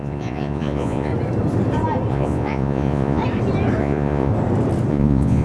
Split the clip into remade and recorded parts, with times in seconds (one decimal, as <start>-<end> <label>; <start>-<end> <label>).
0.0-1.1 remade; 1.1-2.1 recorded; 2.1-3.2 remade; 3.2-3.8 recorded; 3.8-4.3 remade; 4.3-4.9 recorded; 4.9-5.4 remade